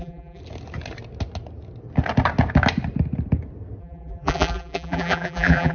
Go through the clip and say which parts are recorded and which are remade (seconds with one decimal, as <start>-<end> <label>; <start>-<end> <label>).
0.0-0.4 remade; 0.4-3.8 recorded; 3.8-5.7 remade